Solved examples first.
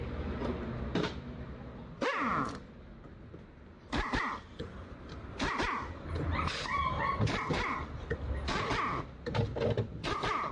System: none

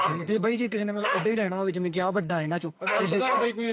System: codec, SNAC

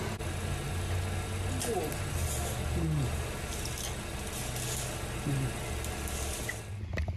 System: none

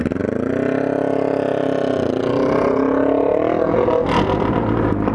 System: none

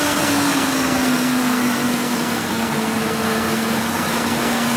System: codec, SNAC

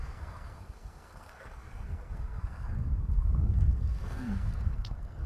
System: codec, SNAC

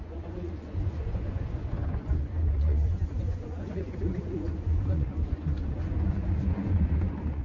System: vocoder, Vocos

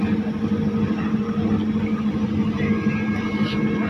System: none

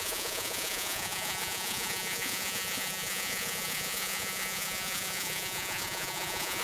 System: vocoder, Vocos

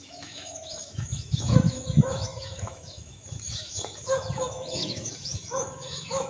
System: autoencoder, DAC-VAE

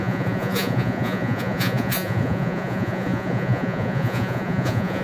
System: vocoder, Vocos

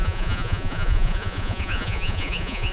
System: vocoder, Vocos